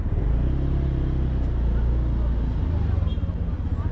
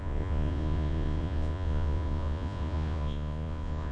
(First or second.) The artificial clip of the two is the second